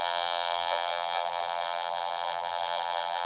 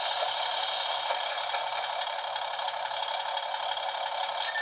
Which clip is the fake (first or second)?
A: first